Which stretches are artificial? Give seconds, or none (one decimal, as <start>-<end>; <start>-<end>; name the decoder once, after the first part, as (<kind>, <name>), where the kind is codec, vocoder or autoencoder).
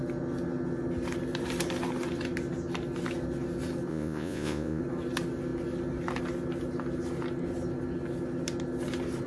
3.9-4.8 (vocoder, Vocos)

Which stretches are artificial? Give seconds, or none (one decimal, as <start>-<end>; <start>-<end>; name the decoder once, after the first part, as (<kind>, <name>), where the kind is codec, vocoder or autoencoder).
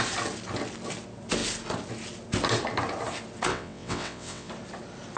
3.5-4.5 (vocoder, WaveNeXt)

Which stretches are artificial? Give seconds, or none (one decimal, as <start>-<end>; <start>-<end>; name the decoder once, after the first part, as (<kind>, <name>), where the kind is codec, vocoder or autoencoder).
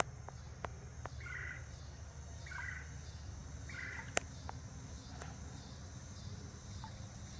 none